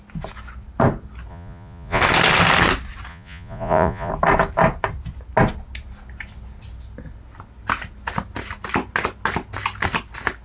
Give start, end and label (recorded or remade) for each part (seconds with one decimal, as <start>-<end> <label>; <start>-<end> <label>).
0.0-1.3 recorded; 1.3-2.0 remade; 2.0-3.1 recorded; 3.1-4.1 remade; 4.1-10.4 recorded